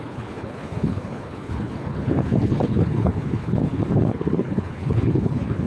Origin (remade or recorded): remade